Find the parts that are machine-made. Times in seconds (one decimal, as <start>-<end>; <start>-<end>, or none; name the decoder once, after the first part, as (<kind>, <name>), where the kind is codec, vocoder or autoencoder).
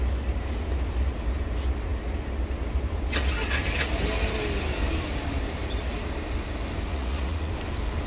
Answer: 6.9-7.5 (vocoder, Vocos)